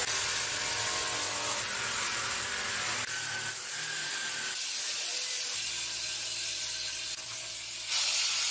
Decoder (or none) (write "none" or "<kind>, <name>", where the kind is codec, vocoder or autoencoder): none